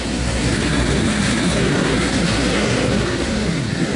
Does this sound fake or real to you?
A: fake